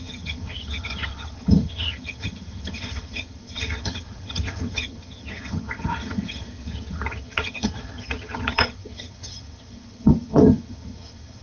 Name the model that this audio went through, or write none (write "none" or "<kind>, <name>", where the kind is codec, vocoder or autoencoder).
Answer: vocoder, HiFi-GAN